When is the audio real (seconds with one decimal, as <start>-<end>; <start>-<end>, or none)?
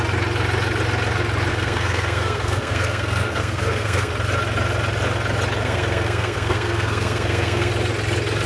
0.0-1.5; 4.1-5.6; 7.7-8.5